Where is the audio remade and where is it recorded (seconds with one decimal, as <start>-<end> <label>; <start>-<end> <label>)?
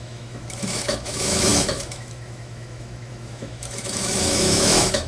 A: 0.0-5.1 remade